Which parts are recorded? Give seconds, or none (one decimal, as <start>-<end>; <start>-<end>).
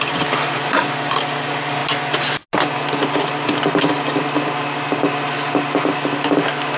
0.0-6.8